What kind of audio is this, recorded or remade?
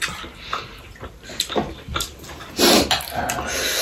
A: recorded